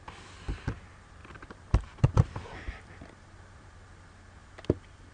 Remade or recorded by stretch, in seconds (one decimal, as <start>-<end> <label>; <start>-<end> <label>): 0.0-1.2 recorded; 1.2-3.8 remade; 3.8-5.1 recorded